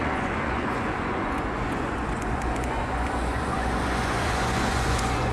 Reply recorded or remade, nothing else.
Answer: remade